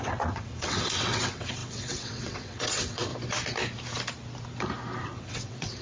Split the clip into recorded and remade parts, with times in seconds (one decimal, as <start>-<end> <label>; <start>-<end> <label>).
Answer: 0.0-3.1 remade; 3.1-5.0 recorded; 5.0-5.8 remade